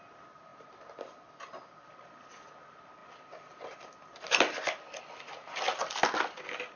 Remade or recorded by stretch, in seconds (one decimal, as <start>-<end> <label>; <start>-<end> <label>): 0.0-6.8 recorded